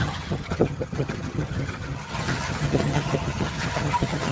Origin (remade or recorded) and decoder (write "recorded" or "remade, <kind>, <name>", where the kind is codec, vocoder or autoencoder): remade, vocoder, HiFi-GAN